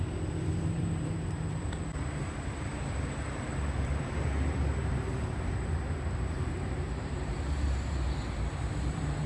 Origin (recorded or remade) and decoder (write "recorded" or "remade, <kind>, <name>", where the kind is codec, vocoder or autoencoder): remade, vocoder, BigVGAN v2